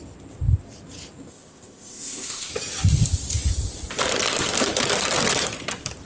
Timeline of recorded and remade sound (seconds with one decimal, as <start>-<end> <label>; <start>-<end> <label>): 0.0-1.3 recorded; 1.3-2.5 remade; 2.5-6.1 recorded